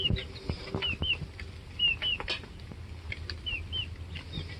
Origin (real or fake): real